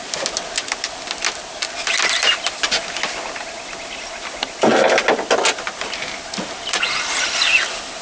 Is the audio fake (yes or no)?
no